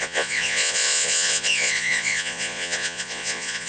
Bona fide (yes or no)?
no